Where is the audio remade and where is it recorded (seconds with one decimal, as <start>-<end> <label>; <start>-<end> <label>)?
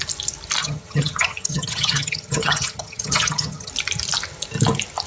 0.0-0.6 recorded; 0.6-3.7 remade; 3.7-5.1 recorded